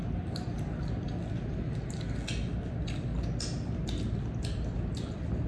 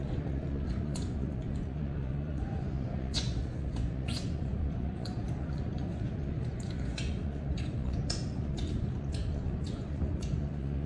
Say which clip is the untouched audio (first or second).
first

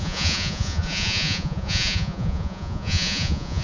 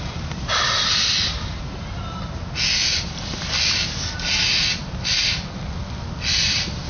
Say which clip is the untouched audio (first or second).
second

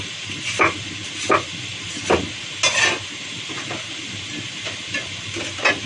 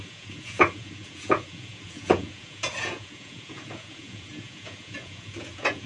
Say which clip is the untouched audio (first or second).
first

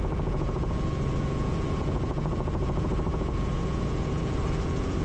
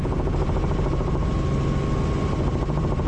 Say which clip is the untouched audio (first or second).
second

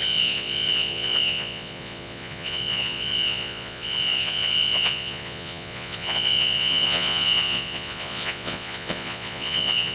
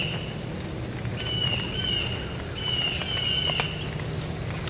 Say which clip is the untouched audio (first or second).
second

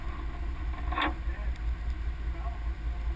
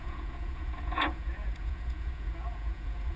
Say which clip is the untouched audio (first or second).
first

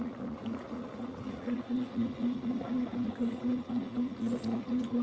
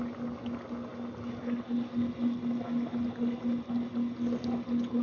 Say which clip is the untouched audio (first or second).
second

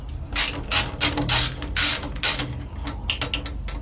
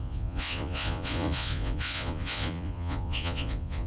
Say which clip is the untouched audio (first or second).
first